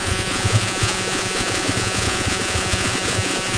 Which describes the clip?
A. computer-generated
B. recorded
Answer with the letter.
A